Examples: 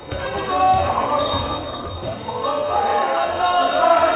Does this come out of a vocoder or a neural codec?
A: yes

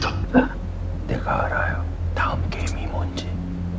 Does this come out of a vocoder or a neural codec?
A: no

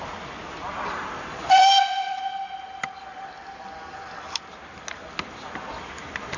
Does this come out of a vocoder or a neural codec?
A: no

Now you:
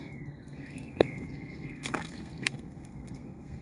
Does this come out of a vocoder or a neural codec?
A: yes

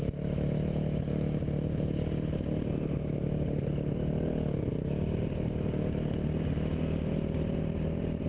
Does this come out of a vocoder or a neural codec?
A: no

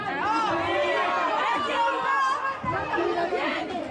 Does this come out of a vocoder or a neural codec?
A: no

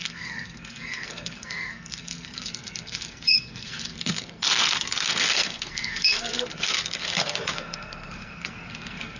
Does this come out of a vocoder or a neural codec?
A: yes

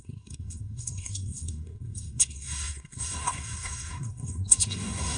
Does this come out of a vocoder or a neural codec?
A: yes